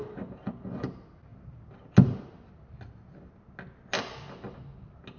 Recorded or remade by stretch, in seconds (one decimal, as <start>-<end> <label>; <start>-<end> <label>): 0.0-5.2 recorded